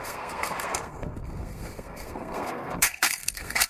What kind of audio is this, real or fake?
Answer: fake